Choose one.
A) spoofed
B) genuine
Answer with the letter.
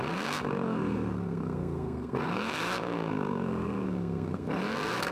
A